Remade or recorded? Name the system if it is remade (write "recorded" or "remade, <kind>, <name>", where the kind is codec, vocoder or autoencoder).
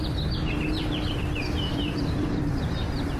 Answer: remade, vocoder, BigVGAN v2